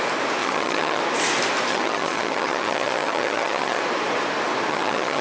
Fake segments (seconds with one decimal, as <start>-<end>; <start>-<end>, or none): 0.4-1.0; 1.7-3.8; 4.7-5.2